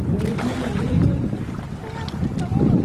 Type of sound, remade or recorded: recorded